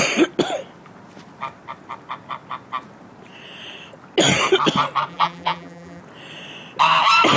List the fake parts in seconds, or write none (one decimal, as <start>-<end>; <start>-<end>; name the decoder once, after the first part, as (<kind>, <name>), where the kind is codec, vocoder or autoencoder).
5.1-6.0 (vocoder, BigVGAN v2)